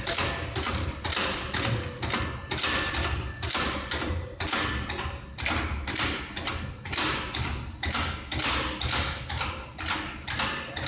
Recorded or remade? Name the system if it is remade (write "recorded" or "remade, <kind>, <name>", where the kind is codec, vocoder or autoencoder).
recorded